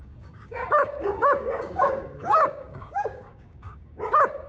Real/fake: fake